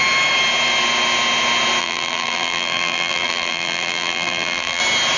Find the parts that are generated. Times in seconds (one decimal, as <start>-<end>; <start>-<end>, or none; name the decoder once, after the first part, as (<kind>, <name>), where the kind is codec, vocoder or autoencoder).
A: 1.8-4.8 (vocoder, BigVGAN v2)